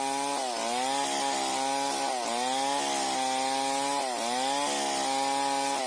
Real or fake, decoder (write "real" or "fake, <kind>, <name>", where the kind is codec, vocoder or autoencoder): real